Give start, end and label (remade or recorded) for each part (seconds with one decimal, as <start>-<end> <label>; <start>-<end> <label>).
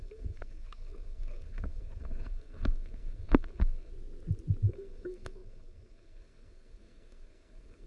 0.0-3.9 remade; 3.9-4.7 recorded; 4.7-7.9 remade